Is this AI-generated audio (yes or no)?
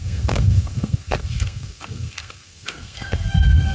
yes